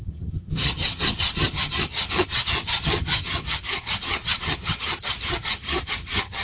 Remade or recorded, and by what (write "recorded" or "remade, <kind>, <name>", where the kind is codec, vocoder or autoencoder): remade, vocoder, HiFi-GAN